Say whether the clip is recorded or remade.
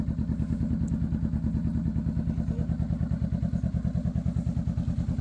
recorded